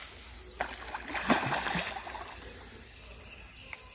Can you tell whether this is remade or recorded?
recorded